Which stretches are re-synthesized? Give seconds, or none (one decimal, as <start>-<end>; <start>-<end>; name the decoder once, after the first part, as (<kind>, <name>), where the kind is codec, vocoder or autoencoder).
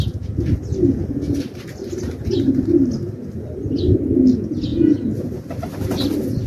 none